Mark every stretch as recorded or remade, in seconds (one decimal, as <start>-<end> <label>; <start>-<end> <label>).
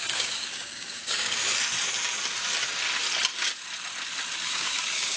0.0-1.4 remade; 1.4-4.5 recorded; 4.5-5.2 remade